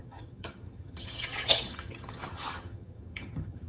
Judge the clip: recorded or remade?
remade